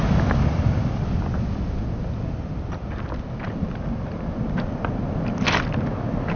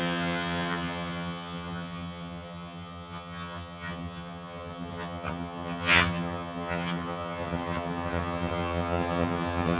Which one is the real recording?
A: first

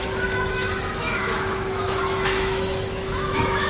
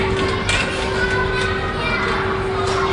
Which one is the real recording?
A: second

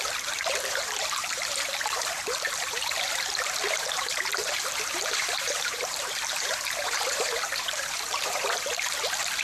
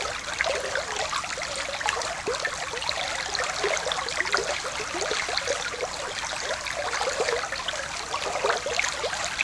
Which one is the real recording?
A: second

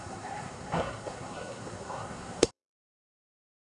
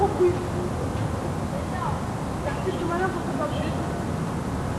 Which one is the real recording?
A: second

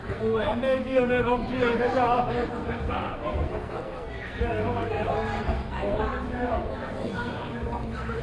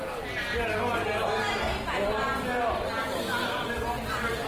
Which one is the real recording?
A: second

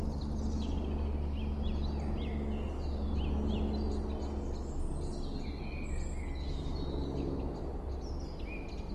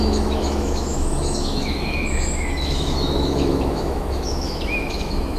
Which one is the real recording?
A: first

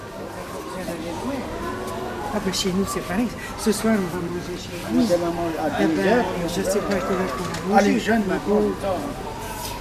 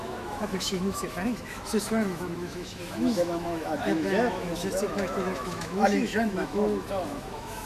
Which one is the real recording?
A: first